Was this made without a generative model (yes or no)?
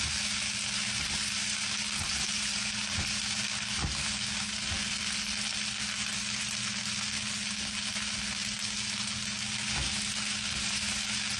yes